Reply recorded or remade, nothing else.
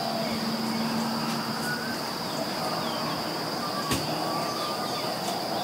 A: recorded